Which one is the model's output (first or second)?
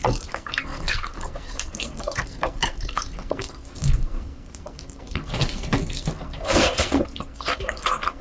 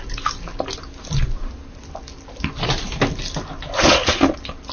first